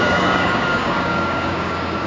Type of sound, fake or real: fake